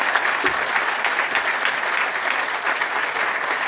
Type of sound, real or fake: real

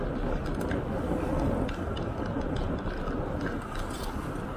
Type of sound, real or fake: real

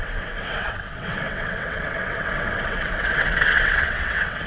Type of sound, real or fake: fake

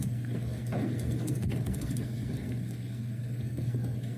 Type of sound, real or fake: fake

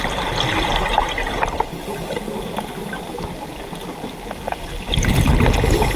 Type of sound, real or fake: real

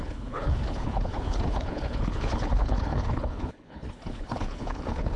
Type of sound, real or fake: fake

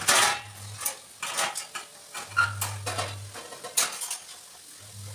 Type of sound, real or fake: real